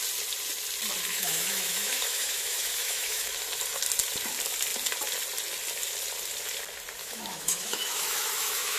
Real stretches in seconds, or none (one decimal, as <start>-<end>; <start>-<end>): 0.0-1.1; 3.3-7.0